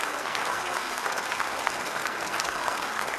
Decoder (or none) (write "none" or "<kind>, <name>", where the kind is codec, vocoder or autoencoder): codec, SNAC